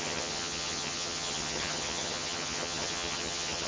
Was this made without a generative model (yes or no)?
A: no